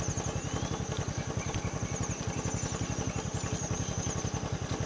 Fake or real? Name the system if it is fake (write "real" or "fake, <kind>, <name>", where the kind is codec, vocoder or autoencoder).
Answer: real